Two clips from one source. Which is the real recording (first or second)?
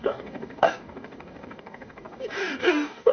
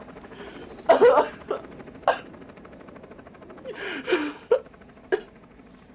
second